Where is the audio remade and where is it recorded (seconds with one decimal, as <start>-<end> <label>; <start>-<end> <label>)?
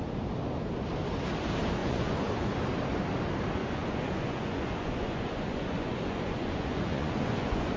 0.0-1.8 recorded; 1.8-2.5 remade; 2.5-3.6 recorded; 3.6-7.8 remade